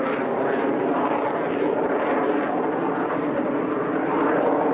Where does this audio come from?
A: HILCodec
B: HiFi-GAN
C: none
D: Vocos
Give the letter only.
C